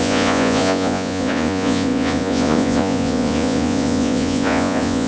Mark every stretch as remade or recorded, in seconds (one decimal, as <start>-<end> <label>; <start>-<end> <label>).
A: 0.0-5.1 remade